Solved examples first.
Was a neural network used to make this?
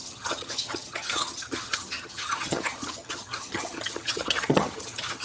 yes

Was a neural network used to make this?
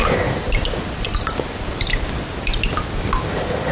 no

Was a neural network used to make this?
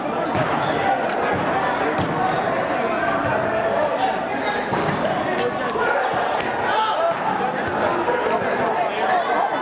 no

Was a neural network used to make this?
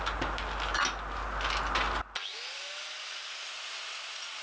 no